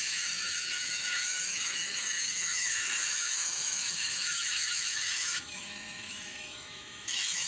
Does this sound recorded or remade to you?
remade